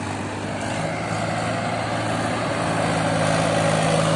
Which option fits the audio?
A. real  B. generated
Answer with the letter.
A